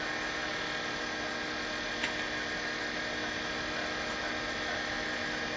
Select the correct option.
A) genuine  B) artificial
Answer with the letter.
A